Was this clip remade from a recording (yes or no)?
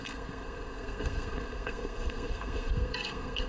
yes